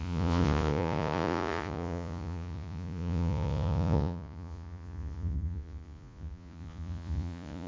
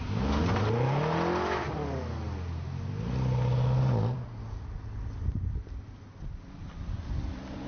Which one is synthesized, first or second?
first